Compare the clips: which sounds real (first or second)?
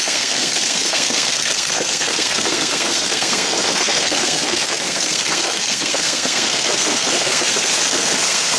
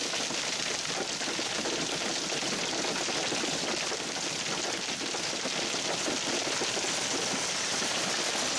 second